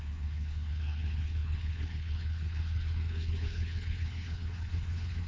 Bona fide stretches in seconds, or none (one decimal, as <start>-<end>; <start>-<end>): none